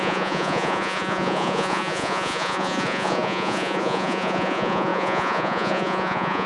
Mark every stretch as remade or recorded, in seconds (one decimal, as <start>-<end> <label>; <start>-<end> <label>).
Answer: 0.0-6.5 remade